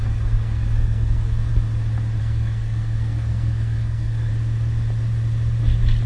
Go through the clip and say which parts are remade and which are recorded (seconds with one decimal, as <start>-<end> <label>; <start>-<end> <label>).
0.0-1.5 remade; 1.5-2.2 recorded; 2.2-4.3 remade; 4.3-6.1 recorded